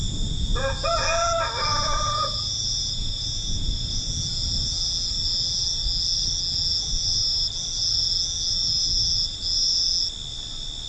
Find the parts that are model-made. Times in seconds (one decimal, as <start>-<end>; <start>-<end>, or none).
1.7-4.1